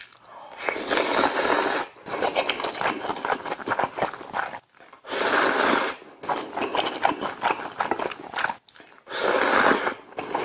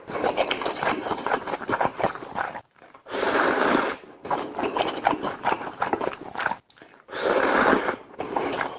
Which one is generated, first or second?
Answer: second